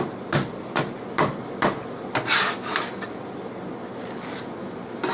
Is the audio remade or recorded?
recorded